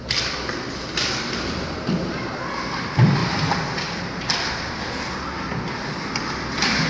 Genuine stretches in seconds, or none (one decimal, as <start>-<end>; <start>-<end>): 0.0-6.9